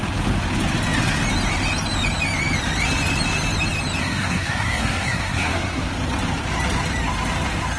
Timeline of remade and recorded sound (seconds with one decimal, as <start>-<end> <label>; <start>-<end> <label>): 0.0-4.0 recorded; 4.0-5.9 remade; 5.9-7.8 recorded